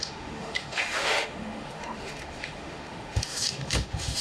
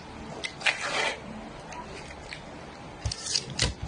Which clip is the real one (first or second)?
second